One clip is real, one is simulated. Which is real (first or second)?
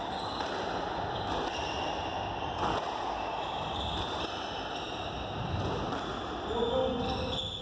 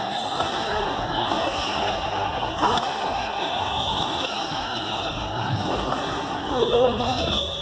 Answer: first